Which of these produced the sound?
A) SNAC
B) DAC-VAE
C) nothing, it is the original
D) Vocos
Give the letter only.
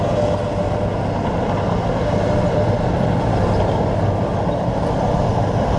C